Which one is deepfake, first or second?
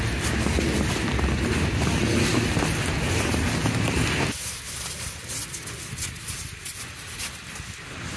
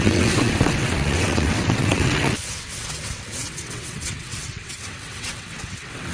second